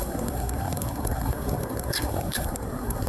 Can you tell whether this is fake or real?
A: fake